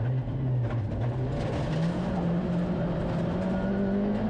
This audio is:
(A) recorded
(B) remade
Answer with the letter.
A